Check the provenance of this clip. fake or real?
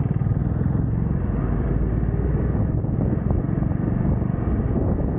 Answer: real